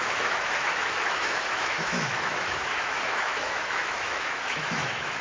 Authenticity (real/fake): fake